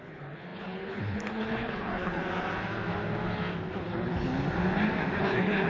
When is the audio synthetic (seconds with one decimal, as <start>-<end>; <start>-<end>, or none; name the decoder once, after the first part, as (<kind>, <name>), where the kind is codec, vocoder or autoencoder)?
0.0-2.2 (codec, HILCodec); 3.8-4.3; 5.2-5.7